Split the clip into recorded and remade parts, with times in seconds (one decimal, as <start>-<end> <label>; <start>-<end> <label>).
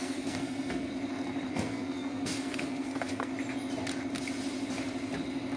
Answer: 0.0-0.9 remade; 0.9-1.5 recorded; 1.5-3.3 remade; 3.3-5.6 recorded